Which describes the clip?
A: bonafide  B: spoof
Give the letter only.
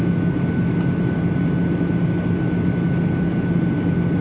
A